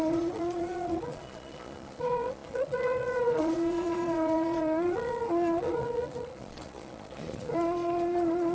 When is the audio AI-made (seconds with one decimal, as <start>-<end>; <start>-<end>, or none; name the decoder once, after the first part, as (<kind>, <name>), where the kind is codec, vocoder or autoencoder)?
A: 0.0-8.5 (vocoder, Vocos)

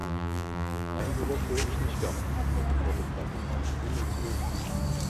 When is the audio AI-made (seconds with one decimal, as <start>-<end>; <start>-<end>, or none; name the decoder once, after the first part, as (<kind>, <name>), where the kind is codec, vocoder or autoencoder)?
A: 0.0-1.0 (vocoder, BigVGAN v2)